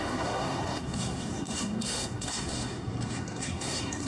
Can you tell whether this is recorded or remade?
remade